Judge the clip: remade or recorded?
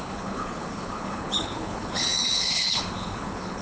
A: remade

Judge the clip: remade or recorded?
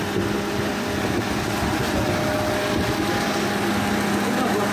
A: recorded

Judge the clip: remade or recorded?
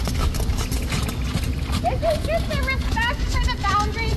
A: recorded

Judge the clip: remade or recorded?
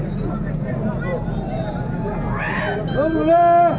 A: recorded